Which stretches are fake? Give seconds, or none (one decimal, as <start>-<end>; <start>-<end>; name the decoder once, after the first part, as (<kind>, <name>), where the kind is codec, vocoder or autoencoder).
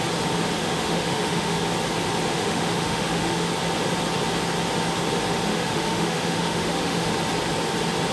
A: 0.6-1.6 (autoencoder, DAC-VAE); 2.3-3.5; 5.5-7.1